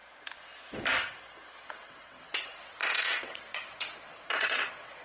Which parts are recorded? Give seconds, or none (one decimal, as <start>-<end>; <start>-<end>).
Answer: 0.0-1.7